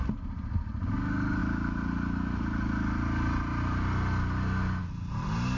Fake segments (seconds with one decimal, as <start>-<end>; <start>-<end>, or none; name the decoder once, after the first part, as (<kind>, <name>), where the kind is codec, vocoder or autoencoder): none